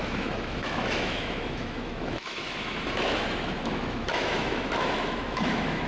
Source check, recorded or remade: remade